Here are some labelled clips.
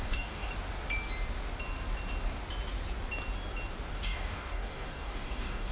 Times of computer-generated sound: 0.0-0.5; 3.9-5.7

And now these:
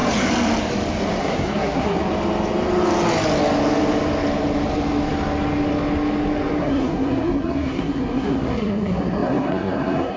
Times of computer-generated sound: 1.2-2.0; 6.6-10.2